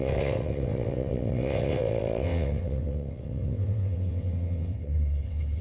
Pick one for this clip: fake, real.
fake